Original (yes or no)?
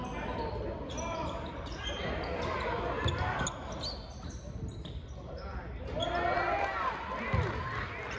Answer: yes